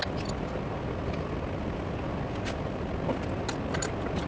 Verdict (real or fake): real